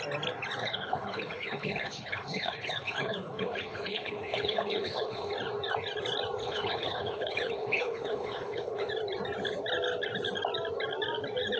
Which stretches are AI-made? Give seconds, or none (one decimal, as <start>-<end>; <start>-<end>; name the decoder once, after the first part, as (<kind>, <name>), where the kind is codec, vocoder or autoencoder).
0.6-5.3 (codec, HILCodec); 6.4-8.9